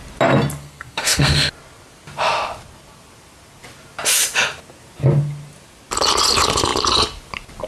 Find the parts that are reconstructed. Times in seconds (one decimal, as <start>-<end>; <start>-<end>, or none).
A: 0.6-1.5